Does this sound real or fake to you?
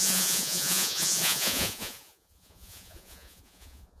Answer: fake